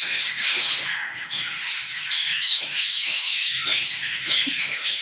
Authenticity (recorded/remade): remade